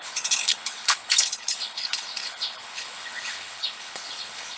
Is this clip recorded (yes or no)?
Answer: no